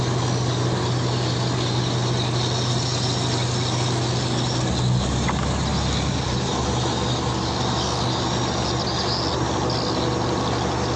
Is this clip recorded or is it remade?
recorded